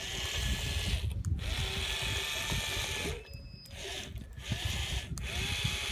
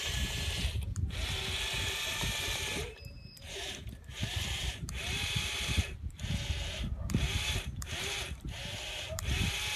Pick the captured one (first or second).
first